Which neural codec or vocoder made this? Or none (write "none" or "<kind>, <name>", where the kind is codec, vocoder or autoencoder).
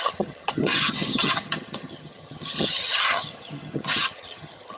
vocoder, HiFi-GAN